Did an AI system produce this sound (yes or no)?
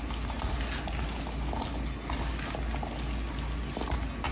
no